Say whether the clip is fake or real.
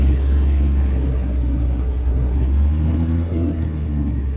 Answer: fake